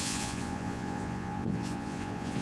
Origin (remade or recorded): remade